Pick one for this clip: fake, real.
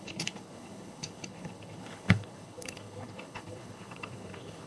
fake